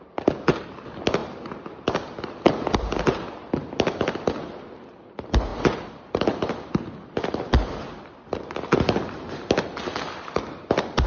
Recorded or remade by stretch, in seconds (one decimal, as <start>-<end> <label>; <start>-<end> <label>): 0.0-3.4 recorded; 3.4-4.1 remade; 4.1-9.9 recorded; 9.9-10.5 remade; 10.5-11.1 recorded